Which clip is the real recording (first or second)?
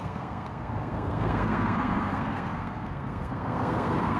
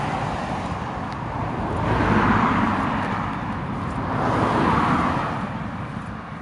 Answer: second